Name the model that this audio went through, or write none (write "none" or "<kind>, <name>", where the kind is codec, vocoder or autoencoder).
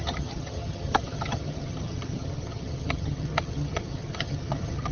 vocoder, HiFi-GAN